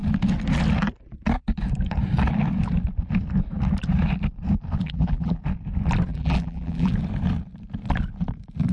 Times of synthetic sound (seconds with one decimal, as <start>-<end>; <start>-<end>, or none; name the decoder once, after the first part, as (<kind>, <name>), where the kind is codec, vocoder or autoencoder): 4.8-5.4 (vocoder, BigVGAN v2); 6.1-6.9